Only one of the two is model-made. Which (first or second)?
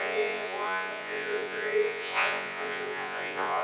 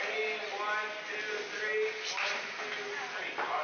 first